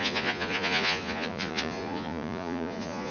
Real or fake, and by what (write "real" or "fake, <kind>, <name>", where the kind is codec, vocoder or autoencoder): fake, vocoder, Vocos